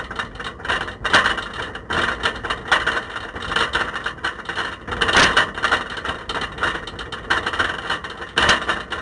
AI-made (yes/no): no